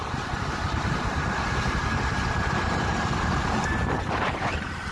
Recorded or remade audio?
remade